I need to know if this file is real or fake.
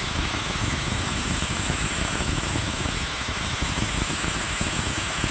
fake